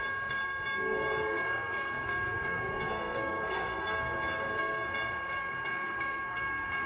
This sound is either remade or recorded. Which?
remade